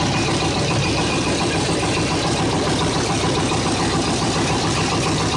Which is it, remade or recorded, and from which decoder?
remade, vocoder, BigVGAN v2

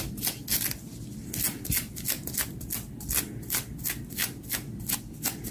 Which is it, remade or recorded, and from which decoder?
recorded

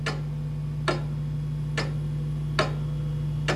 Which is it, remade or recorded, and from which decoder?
recorded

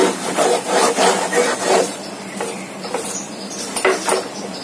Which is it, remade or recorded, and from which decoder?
remade, vocoder, BigVGAN v2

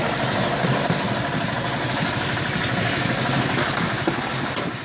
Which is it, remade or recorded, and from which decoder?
recorded